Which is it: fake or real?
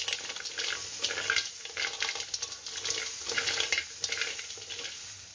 real